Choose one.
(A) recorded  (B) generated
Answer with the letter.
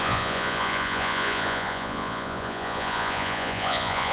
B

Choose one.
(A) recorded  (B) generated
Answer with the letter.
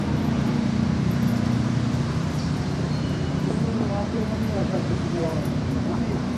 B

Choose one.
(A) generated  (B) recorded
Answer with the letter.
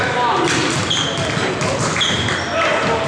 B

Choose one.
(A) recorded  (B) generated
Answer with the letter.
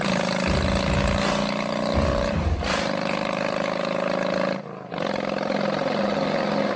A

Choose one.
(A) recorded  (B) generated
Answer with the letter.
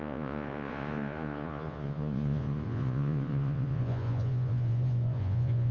B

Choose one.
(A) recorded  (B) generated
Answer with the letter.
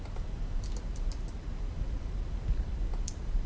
A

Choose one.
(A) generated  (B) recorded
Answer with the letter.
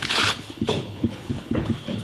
A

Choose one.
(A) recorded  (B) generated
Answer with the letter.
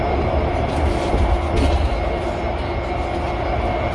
A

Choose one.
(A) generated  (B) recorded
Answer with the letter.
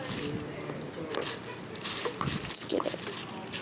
B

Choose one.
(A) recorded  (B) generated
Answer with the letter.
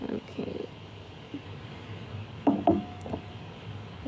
B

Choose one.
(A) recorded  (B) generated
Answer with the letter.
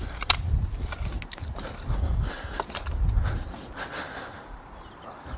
A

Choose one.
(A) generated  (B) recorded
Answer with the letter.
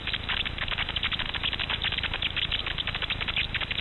B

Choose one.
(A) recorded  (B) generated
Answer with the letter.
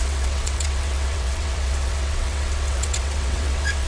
B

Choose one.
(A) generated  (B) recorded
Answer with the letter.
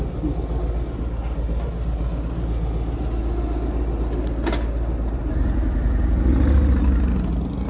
B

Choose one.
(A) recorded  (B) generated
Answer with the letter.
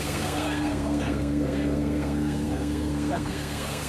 B